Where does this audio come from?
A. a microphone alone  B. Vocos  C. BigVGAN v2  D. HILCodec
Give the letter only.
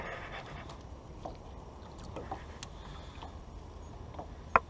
A